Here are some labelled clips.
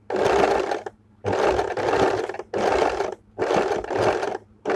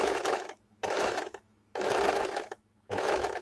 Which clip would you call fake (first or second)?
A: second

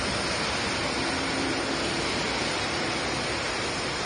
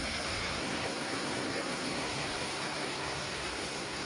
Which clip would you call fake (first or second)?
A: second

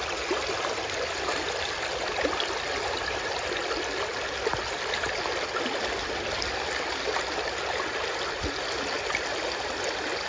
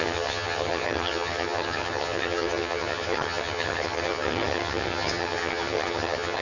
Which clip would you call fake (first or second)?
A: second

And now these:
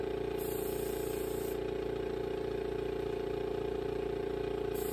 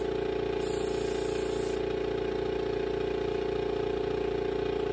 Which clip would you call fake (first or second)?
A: first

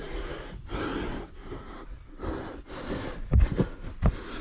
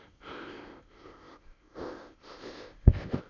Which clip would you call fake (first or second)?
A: second